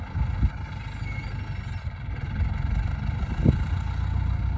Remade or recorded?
recorded